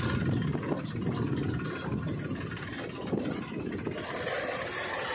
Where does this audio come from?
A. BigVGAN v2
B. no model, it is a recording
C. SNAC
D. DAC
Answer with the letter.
B